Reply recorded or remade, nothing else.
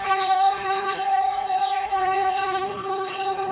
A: remade